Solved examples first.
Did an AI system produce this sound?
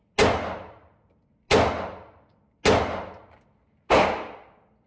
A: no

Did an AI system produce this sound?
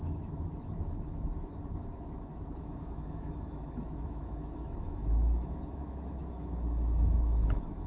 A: yes